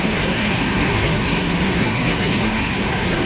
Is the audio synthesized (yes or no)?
yes